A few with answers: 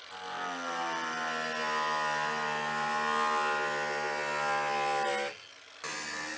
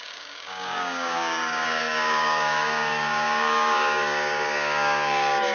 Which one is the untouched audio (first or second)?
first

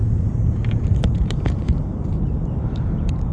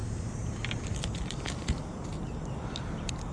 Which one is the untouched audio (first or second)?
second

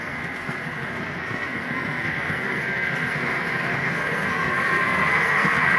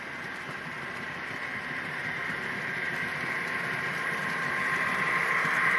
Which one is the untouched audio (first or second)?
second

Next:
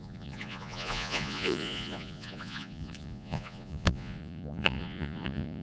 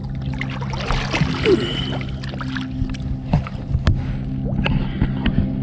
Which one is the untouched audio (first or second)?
second